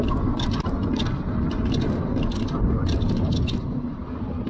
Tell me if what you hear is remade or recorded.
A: recorded